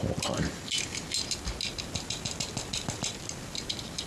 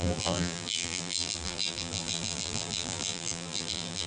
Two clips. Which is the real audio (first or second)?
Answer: first